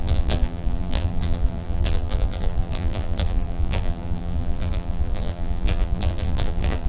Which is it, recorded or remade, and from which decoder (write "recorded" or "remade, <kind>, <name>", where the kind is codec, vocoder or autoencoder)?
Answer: remade, vocoder, BigVGAN v2